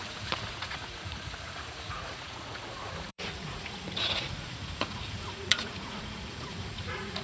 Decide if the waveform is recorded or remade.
remade